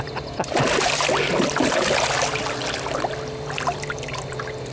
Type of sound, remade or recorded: recorded